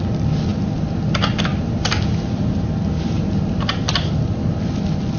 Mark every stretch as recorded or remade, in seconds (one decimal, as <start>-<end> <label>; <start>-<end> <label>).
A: 0.0-1.5 recorded; 1.5-4.6 remade; 4.6-5.2 recorded